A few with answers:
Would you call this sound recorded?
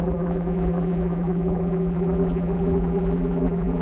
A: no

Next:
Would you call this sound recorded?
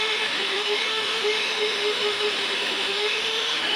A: no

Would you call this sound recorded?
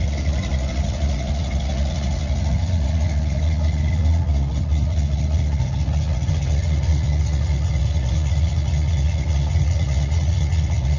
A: no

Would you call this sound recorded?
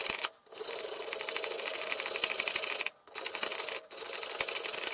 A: yes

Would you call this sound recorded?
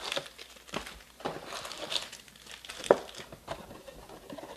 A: yes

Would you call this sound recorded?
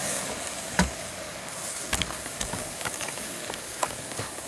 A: no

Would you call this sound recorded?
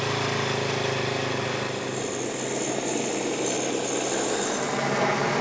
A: yes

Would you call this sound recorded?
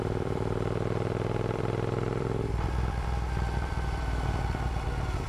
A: no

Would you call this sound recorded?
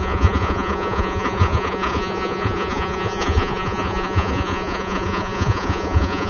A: no